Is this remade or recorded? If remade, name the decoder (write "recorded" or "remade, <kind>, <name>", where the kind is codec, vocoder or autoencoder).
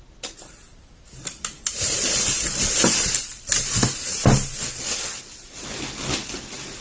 recorded